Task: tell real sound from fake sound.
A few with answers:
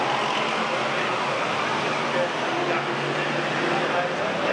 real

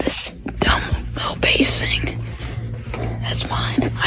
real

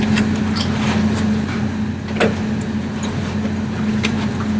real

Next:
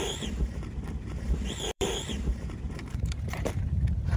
fake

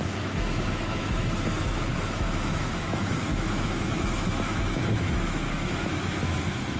fake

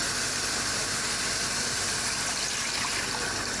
real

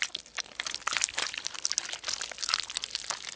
real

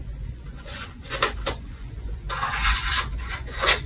fake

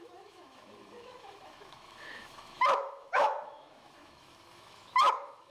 fake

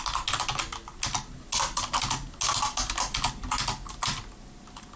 real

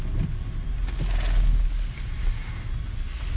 real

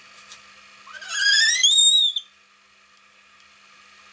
real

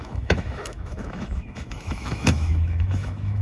fake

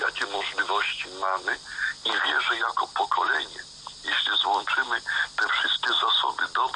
real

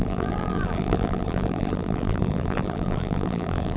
fake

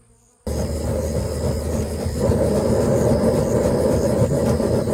real